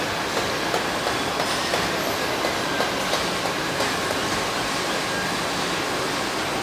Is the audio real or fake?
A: real